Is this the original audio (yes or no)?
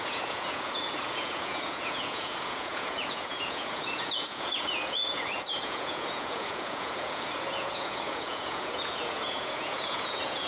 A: no